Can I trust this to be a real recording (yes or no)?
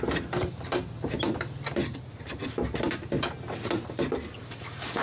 yes